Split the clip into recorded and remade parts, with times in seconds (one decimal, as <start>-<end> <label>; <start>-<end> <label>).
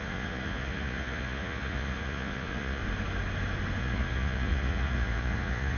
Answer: 0.0-2.8 remade; 2.8-3.8 recorded; 3.8-5.8 remade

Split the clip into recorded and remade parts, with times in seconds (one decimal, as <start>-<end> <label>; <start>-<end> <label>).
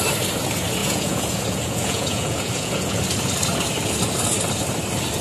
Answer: 0.0-0.8 recorded; 0.8-3.0 remade; 3.0-5.2 recorded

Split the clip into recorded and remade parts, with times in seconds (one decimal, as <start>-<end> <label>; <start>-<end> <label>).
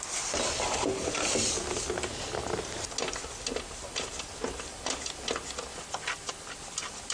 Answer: 0.0-7.1 recorded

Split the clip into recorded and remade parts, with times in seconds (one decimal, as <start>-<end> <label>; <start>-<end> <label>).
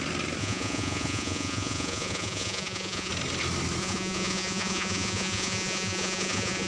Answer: 0.0-0.4 recorded; 0.4-3.1 remade; 3.1-3.8 recorded; 3.8-6.7 remade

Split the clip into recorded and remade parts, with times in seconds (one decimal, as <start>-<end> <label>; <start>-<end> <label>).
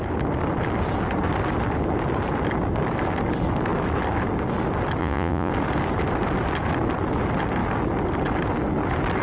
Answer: 0.0-5.0 recorded; 5.0-5.5 remade; 5.5-9.2 recorded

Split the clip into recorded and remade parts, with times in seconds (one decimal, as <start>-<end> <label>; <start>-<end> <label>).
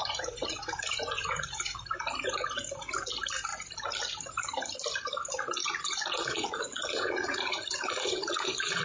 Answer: 0.0-1.8 remade; 1.8-5.6 recorded; 5.6-8.8 remade